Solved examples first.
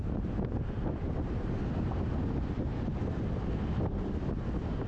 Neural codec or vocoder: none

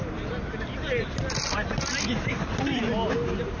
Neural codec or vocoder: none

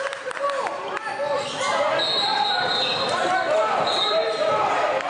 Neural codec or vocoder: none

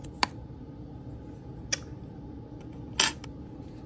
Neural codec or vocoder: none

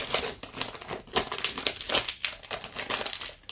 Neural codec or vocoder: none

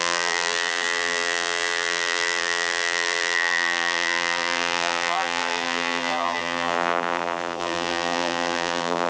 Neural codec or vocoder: vocoder, BigVGAN v2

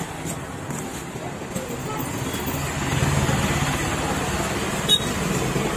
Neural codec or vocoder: none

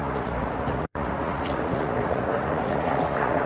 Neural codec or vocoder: vocoder, Vocos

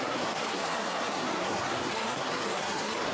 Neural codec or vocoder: codec, SNAC